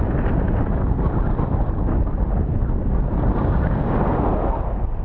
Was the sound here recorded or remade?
recorded